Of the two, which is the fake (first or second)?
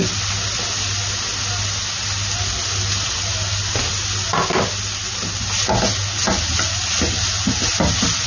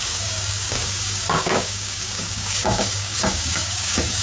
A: second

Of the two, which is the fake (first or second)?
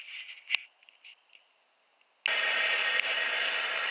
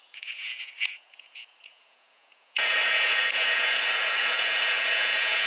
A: second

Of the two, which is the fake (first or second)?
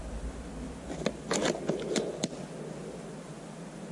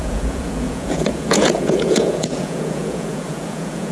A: second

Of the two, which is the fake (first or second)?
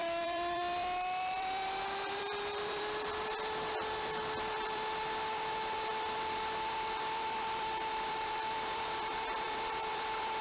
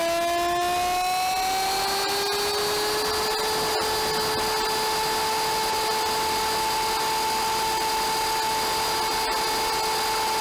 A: first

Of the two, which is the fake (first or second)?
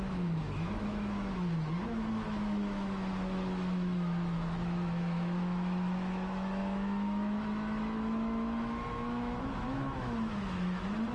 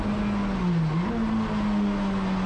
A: first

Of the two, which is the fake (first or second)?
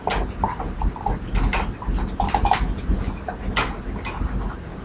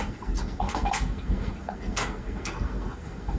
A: second